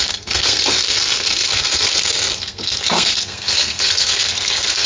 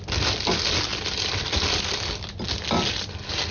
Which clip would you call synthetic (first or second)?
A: first